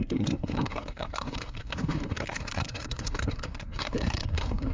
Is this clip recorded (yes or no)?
no